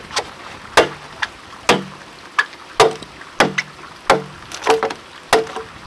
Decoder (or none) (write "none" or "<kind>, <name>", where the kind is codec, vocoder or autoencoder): none